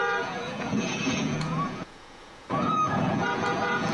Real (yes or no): no